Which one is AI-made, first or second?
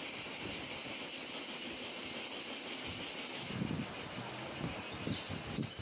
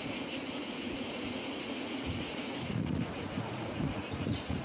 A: second